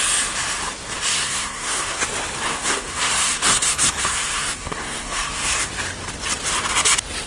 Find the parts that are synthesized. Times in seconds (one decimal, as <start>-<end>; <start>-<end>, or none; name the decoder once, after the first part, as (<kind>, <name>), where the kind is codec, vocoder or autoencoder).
1.1-2.0 (codec, SNAC); 2.5-5.7